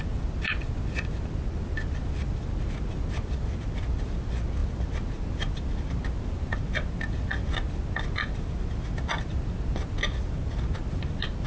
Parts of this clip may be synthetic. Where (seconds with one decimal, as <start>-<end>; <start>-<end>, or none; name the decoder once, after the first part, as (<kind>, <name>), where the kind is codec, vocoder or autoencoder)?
none